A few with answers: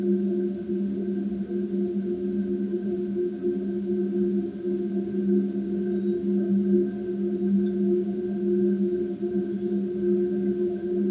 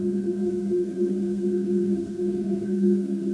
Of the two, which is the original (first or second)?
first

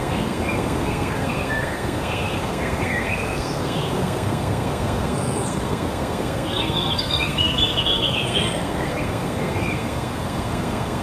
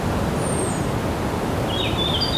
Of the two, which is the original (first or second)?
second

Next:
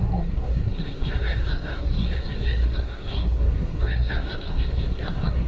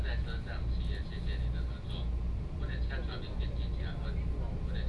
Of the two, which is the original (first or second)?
second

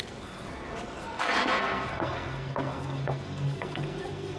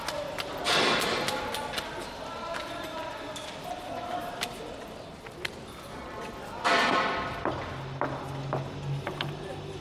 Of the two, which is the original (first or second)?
second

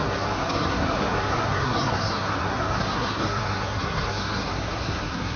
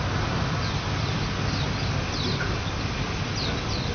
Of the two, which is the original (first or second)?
second